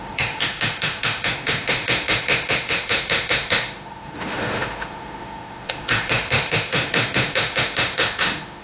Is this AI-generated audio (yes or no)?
yes